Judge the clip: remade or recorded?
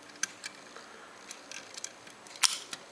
recorded